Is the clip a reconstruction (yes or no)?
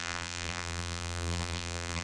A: yes